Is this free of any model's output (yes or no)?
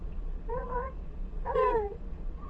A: no